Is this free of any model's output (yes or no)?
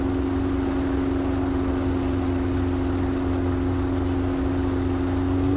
yes